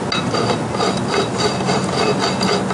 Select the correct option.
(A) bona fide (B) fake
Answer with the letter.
A